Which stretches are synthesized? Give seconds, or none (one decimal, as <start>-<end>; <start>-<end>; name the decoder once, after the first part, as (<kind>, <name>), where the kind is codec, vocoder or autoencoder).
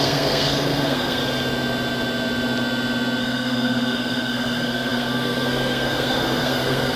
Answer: 0.0-1.2 (codec, SNAC); 3.2-7.0